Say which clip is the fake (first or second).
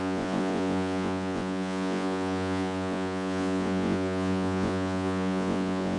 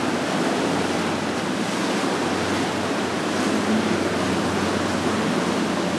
first